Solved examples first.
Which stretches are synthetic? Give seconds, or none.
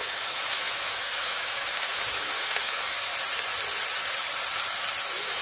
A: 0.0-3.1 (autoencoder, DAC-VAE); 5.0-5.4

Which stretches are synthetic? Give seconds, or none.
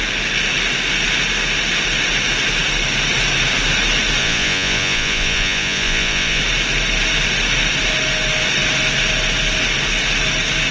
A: 4.2-6.4 (vocoder, Vocos)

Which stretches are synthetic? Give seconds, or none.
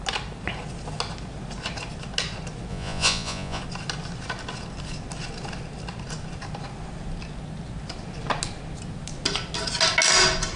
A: 2.7-3.6 (vocoder, Vocos)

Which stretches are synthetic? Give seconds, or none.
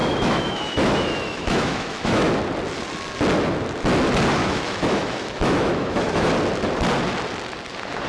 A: 0.0-2.3 (autoencoder, DAC-VAE); 4.4-6.3